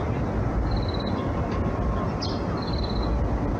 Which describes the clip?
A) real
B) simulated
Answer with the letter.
A